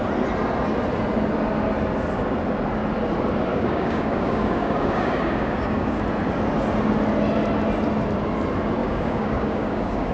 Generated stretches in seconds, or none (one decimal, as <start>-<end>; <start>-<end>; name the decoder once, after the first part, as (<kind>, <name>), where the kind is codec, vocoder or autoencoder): 3.5-6.0 (codec, DAC); 8.8-10.1